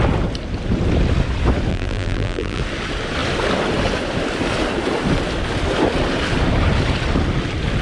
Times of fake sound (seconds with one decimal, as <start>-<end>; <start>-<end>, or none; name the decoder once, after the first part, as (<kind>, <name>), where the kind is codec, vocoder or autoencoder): 1.7-2.6 (vocoder, BigVGAN v2)